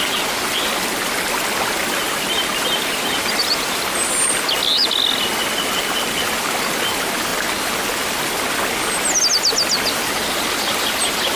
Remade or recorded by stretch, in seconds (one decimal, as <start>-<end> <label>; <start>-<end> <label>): 0.0-2.5 recorded; 2.5-3.8 remade; 3.8-10.2 recorded; 10.2-10.8 remade; 10.8-11.4 recorded